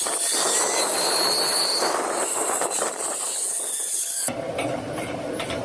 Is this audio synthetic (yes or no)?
no